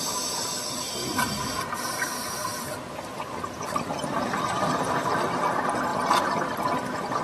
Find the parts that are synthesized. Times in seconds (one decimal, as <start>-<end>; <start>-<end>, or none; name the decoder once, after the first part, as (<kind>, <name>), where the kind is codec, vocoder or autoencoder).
1.0-5.2 (vocoder, BigVGAN v2); 5.9-7.2